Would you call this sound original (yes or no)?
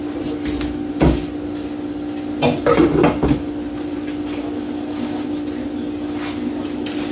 yes